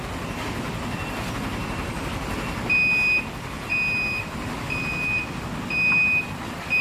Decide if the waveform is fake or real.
real